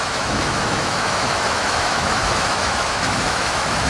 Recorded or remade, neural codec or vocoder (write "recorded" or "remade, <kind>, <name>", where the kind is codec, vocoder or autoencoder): remade, autoencoder, DAC-VAE